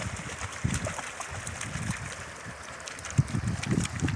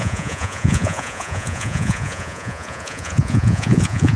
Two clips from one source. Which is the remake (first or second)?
second